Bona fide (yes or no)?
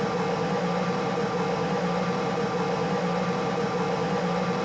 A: yes